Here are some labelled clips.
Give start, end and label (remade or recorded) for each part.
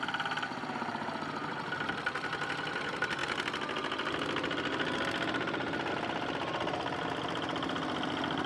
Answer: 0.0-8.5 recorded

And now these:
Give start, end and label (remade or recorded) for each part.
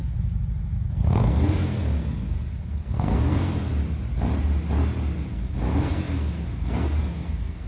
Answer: 0.0-0.9 recorded; 0.9-3.7 remade; 3.7-5.3 recorded; 5.3-7.7 remade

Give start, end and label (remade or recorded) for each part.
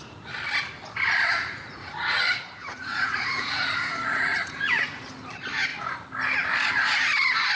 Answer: 0.0-1.3 recorded; 1.3-5.0 remade; 5.0-7.6 recorded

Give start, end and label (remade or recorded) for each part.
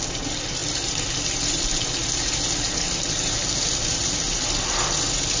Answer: 0.0-5.4 recorded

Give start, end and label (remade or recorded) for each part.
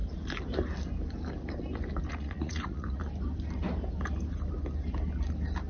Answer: 0.0-2.1 recorded; 2.1-3.0 remade; 3.0-5.7 recorded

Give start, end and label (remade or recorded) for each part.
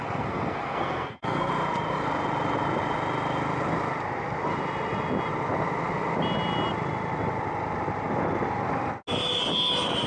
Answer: 0.0-1.5 remade; 1.5-10.1 recorded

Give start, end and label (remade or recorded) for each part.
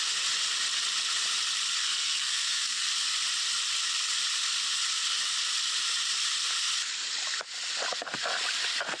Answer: 0.0-1.8 recorded; 1.8-2.9 remade; 2.9-9.0 recorded